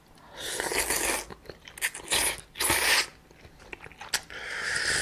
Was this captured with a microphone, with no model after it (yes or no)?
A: yes